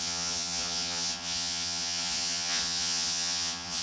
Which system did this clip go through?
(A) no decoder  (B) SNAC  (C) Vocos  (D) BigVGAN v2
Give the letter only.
C